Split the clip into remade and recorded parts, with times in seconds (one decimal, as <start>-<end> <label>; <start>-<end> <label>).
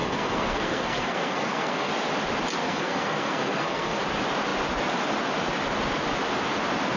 0.0-1.9 remade; 1.9-2.6 recorded; 2.6-4.0 remade; 4.0-7.0 recorded